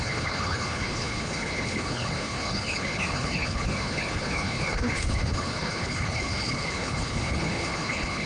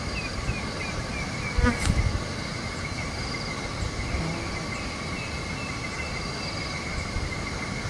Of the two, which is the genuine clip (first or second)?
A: second